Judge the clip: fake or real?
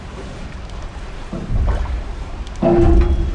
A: real